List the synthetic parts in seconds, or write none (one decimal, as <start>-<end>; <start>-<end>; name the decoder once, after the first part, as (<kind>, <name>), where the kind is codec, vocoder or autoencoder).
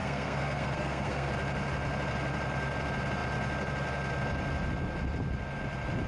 0.0-1.3 (codec, SNAC)